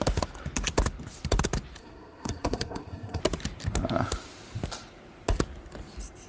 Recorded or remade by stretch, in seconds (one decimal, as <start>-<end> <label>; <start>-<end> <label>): 0.0-1.8 recorded; 1.8-3.2 remade; 3.2-6.3 recorded